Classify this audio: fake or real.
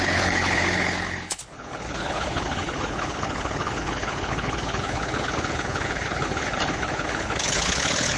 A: fake